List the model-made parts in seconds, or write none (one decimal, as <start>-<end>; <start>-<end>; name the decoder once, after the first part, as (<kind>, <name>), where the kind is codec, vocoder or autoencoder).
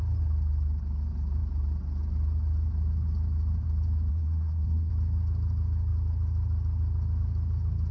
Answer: 4.1-4.9 (codec, SNAC)